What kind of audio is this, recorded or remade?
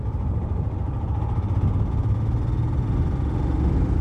recorded